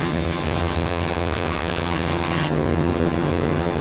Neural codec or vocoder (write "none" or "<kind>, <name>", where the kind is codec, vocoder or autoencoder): vocoder, HiFi-GAN